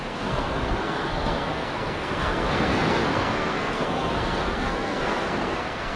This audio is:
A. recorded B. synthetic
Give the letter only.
B